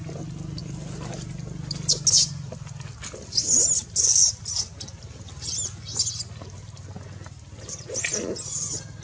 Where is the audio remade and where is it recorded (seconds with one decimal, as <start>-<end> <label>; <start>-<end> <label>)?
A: 0.0-9.0 recorded